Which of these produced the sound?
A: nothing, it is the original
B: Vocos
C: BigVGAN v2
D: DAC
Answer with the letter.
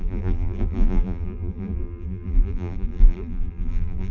C